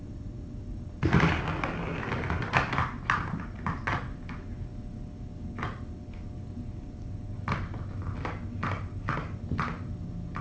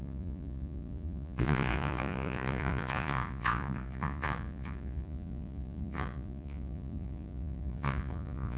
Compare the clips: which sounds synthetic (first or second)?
second